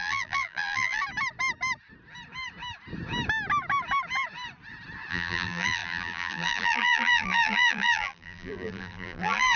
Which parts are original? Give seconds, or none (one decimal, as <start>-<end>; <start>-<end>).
1.0-5.1